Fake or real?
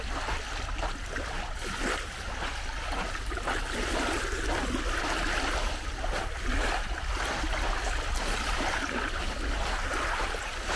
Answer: real